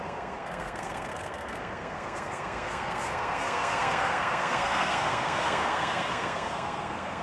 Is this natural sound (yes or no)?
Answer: no